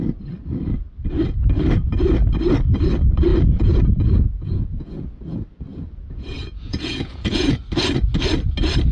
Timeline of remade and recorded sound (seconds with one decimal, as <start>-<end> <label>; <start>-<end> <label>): 0.0-3.3 recorded; 3.3-5.2 remade; 5.2-5.7 recorded; 5.7-7.6 remade; 7.6-8.9 recorded